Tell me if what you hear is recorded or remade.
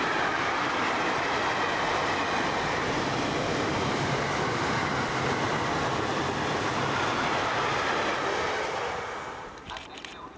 recorded